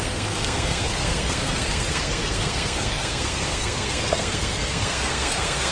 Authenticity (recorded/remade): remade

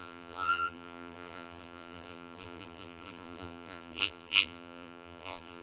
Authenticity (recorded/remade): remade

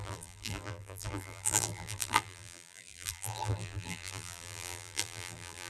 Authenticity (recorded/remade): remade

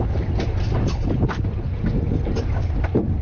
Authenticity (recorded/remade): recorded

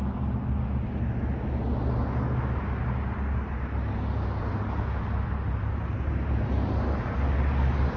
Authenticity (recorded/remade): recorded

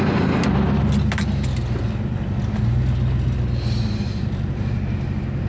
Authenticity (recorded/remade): recorded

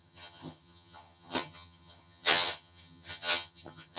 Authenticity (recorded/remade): remade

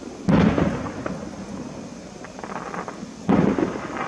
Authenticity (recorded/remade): recorded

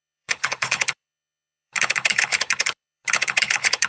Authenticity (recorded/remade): remade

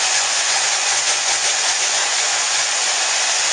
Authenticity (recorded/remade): remade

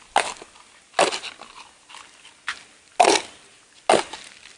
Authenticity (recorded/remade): recorded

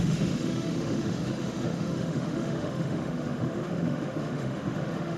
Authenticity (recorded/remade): remade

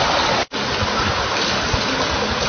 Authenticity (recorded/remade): recorded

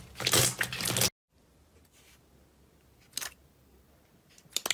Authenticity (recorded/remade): recorded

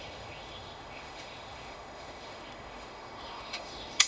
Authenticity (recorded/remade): remade